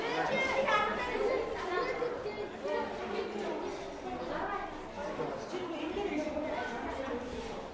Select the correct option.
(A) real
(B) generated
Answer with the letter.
A